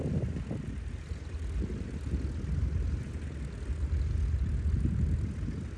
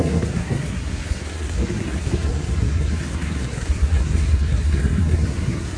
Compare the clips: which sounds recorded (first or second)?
first